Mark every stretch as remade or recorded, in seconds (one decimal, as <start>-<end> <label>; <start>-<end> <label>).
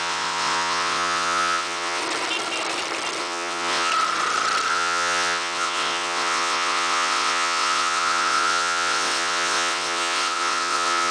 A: 0.0-2.0 remade; 2.0-3.2 recorded; 3.2-3.9 remade; 3.9-4.7 recorded; 4.7-11.1 remade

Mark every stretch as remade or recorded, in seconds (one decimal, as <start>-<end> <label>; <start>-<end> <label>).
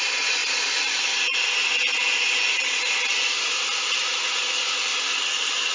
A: 0.0-5.7 recorded